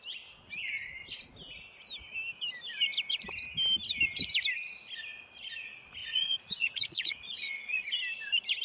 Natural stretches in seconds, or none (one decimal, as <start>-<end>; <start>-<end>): 0.0-6.0; 7.8-8.6

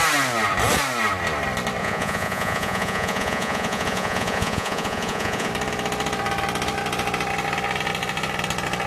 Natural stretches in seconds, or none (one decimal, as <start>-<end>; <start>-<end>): 0.0-1.8; 5.5-8.9

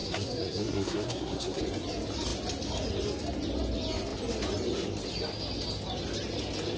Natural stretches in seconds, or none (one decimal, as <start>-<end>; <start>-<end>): 1.6-6.8

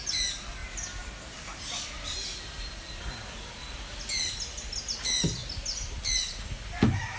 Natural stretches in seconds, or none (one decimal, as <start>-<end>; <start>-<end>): 0.0-7.2

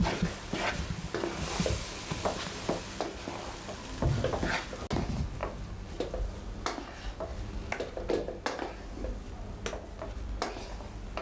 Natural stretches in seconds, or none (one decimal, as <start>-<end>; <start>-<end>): 0.0-11.2

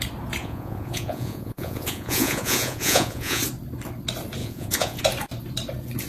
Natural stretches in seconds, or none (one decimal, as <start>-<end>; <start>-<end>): 0.0-0.4; 3.4-4.4; 5.0-6.1

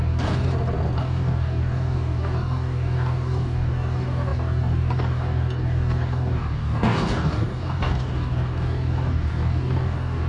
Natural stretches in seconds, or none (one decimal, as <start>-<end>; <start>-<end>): 0.5-1.0

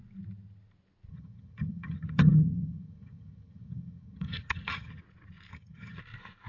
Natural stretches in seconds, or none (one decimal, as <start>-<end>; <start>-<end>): 0.0-1.1; 5.0-5.5; 6.0-6.5